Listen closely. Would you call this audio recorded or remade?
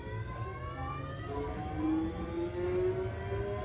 recorded